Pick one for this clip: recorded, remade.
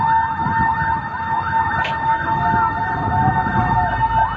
recorded